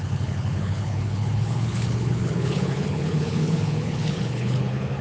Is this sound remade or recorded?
remade